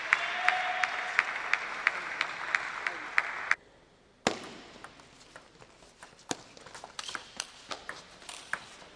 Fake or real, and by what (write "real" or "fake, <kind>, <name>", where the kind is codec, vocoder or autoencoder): real